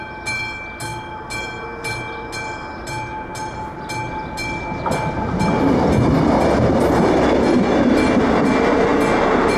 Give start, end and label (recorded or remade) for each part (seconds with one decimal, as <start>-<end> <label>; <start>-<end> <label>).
0.0-9.6 recorded

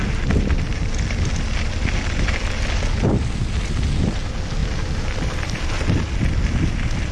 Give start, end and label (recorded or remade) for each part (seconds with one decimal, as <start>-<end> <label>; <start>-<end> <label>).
0.0-7.1 recorded

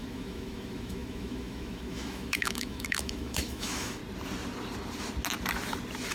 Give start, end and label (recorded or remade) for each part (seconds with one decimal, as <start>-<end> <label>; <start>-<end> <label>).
0.0-4.0 remade; 4.0-6.1 recorded

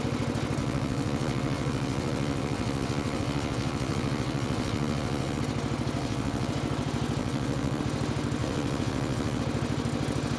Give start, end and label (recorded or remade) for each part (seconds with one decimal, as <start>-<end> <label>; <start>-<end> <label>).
0.0-0.6 recorded; 0.6-5.4 remade; 5.4-6.0 recorded; 6.0-6.5 remade; 6.5-7.2 recorded; 7.2-7.8 remade; 7.8-8.4 recorded; 8.4-9.4 remade; 9.4-10.4 recorded

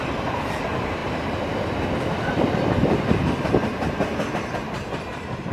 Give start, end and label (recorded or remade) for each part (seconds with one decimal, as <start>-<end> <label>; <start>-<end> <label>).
0.0-1.0 recorded; 1.0-4.3 remade; 4.3-5.5 recorded

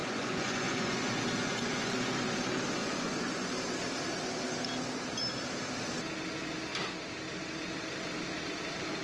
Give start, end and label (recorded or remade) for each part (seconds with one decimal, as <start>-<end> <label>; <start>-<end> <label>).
0.0-2.2 remade; 2.2-2.8 recorded; 2.8-3.5 remade; 3.5-9.0 recorded

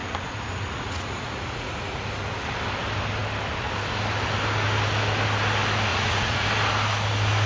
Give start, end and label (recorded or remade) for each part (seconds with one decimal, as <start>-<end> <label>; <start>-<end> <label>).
0.0-2.0 remade; 2.0-5.9 recorded; 5.9-6.5 remade; 6.5-7.5 recorded

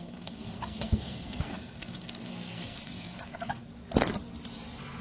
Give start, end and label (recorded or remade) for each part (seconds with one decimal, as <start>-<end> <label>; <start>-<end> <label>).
0.0-3.7 remade; 3.7-5.0 recorded